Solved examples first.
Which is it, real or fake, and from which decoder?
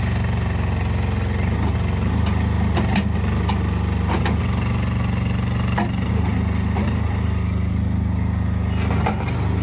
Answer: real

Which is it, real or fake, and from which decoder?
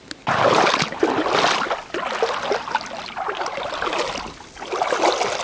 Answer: real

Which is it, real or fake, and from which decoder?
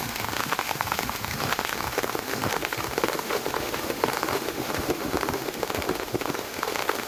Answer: fake, autoencoder, DAC-VAE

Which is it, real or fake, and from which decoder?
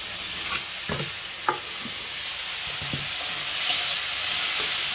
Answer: real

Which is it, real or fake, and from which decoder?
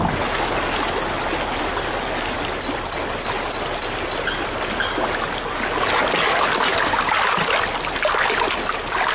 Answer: real